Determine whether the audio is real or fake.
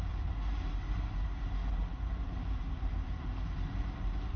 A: fake